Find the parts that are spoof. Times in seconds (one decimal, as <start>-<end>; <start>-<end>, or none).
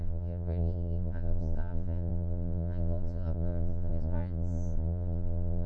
0.0-5.7